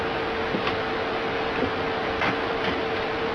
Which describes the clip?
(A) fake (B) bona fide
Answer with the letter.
B